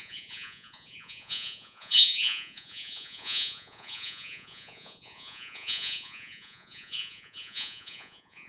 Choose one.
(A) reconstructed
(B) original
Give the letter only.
A